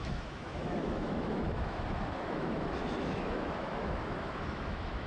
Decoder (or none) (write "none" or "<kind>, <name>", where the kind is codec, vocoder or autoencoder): autoencoder, DAC-VAE